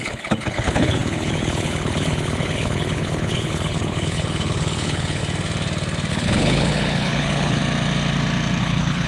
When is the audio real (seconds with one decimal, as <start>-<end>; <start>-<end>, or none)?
5.2-6.1; 7.6-8.6